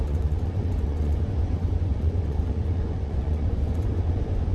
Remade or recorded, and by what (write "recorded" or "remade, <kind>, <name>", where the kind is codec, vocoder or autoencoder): remade, vocoder, Vocos